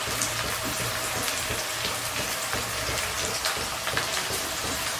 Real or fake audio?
real